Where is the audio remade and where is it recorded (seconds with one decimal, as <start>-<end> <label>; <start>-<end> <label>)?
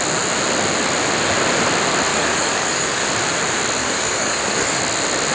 0.0-2.1 recorded; 2.1-3.0 remade; 3.0-3.8 recorded; 3.8-4.8 remade; 4.8-5.3 recorded